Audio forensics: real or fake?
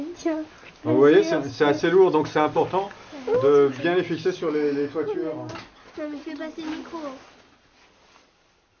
real